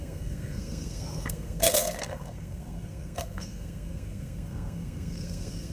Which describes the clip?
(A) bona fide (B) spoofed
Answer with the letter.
B